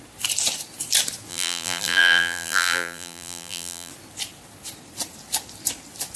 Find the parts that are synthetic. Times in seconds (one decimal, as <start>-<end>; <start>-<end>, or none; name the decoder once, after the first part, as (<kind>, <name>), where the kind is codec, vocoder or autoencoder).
1.3-3.9 (vocoder, BigVGAN v2)